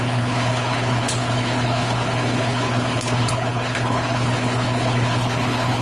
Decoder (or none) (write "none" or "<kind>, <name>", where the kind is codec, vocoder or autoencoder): codec, HILCodec